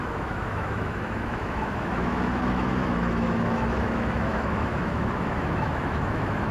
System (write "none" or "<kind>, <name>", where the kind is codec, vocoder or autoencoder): autoencoder, DAC-VAE